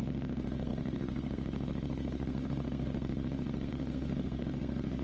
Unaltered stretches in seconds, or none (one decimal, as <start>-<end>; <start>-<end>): none

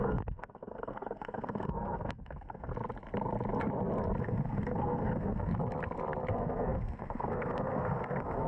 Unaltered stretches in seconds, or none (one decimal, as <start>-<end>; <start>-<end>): 2.7-4.2; 5.5-6.3

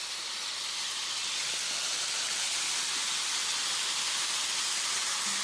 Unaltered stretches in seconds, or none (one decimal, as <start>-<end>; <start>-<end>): 0.0-5.4